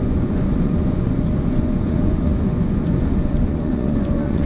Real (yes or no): no